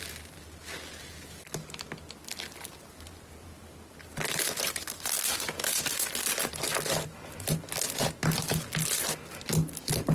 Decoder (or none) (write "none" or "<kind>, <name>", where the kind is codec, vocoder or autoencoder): none